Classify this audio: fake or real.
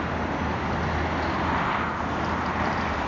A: real